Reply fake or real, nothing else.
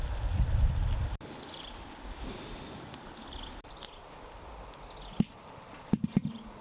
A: real